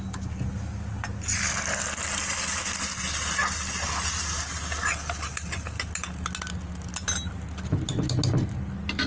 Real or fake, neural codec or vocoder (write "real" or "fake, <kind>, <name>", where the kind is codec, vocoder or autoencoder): real